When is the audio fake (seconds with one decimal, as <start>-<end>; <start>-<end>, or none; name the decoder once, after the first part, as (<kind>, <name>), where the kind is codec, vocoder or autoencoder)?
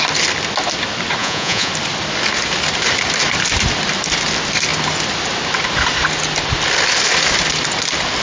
1.2-1.7 (vocoder, Vocos)